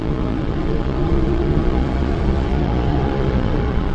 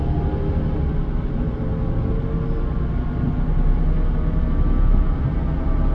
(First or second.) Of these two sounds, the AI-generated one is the first